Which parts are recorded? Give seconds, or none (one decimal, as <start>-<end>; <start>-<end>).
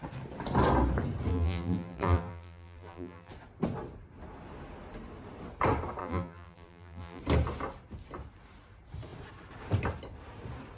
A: 0.0-1.3; 3.3-6.0; 7.2-10.8